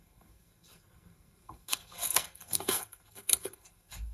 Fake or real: fake